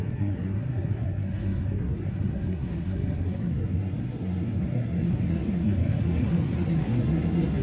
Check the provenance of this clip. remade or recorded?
remade